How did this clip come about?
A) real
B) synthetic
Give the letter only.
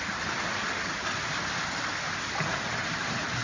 A